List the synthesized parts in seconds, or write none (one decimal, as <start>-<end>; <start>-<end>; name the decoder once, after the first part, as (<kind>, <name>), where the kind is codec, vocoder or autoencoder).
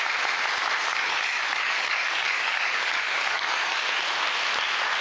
0.9-3.9 (codec, DAC)